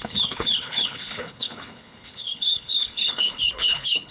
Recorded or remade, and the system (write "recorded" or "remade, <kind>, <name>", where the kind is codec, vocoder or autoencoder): remade, codec, HILCodec